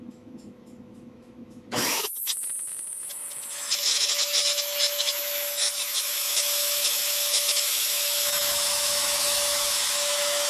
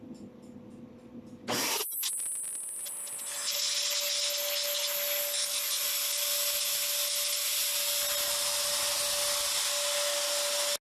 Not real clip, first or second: first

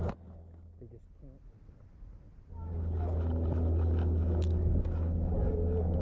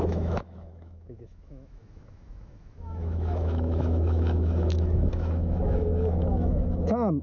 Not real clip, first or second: second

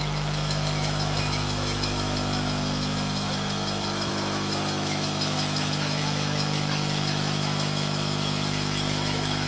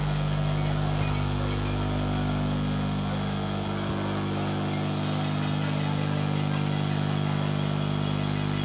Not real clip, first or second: first